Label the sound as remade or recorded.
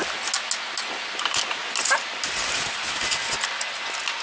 recorded